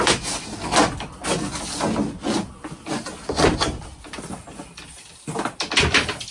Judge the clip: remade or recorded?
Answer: recorded